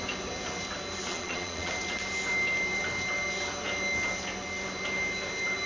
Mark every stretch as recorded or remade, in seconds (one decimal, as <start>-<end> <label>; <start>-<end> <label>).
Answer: 0.0-1.1 recorded; 1.1-1.7 remade; 1.7-5.7 recorded

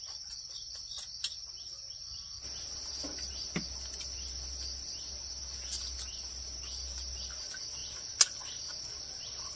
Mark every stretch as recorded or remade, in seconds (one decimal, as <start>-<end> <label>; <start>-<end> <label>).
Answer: 0.0-9.6 recorded

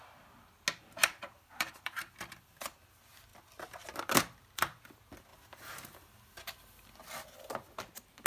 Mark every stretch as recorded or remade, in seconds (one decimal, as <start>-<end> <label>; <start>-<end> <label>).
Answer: 0.0-1.0 recorded; 1.0-2.6 remade; 2.6-3.3 recorded; 3.3-4.8 remade; 4.8-8.3 recorded

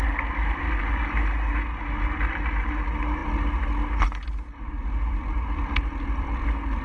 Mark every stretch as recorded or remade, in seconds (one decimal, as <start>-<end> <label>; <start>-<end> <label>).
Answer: 0.0-6.8 recorded

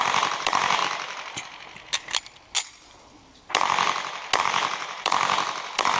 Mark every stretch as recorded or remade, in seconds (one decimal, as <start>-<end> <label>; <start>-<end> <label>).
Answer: 0.0-0.8 remade; 0.8-4.4 recorded; 4.4-6.0 remade

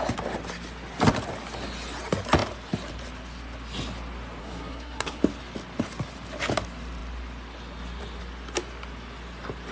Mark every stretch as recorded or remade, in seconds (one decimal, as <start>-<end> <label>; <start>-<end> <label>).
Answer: 0.0-4.4 recorded; 4.4-5.2 remade; 5.2-9.7 recorded

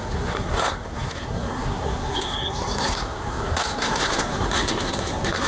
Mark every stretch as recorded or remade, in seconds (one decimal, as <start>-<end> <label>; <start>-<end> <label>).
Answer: 0.0-5.5 remade